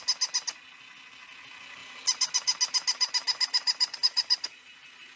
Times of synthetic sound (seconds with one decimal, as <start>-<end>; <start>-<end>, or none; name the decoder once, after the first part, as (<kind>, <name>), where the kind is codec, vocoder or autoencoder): 1.8-5.2 (vocoder, BigVGAN v2)